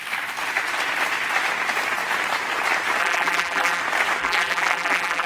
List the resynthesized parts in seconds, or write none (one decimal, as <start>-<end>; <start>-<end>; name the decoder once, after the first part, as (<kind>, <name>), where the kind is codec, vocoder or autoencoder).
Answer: 3.0-3.8 (vocoder, BigVGAN v2); 4.2-5.3